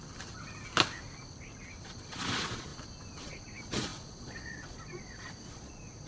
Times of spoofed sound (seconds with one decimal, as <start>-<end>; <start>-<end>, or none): 1.8-2.7; 3.2-6.1